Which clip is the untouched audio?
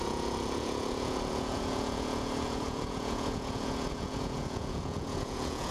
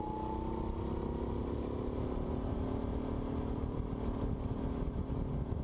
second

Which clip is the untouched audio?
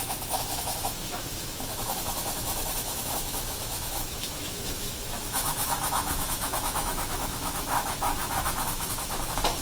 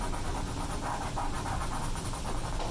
second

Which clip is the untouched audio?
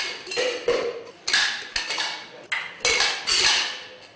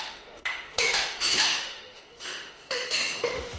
first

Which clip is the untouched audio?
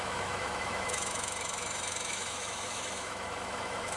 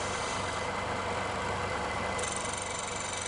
second